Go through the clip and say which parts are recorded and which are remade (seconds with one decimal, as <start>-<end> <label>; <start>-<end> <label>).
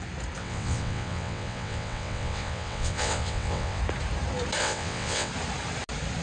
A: 0.0-0.4 recorded; 0.4-3.8 remade; 3.8-4.6 recorded; 4.6-5.3 remade; 5.3-6.2 recorded